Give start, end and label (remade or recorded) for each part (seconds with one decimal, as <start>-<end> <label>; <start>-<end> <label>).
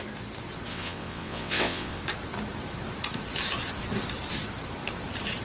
0.0-0.7 recorded; 0.7-2.0 remade; 2.0-5.4 recorded